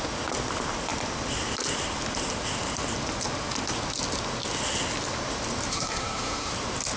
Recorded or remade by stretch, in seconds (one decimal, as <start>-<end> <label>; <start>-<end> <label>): 0.0-5.7 recorded; 5.7-6.5 remade; 6.5-7.0 recorded